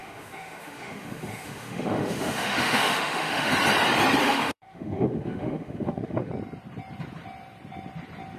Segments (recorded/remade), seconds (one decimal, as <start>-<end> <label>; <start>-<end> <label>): 0.0-3.5 remade; 3.5-4.2 recorded; 4.2-6.3 remade; 6.3-8.4 recorded